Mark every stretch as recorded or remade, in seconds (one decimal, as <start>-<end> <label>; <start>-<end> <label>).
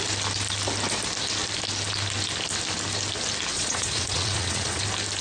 0.0-3.5 recorded; 3.5-4.8 remade; 4.8-5.2 recorded